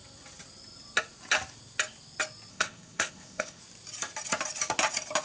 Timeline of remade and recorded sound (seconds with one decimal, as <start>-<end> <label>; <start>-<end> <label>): 0.0-2.5 recorded; 2.5-3.6 remade; 3.6-5.2 recorded